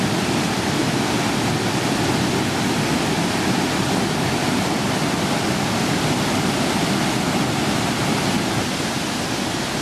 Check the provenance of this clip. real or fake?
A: real